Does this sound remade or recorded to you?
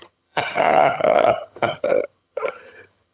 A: remade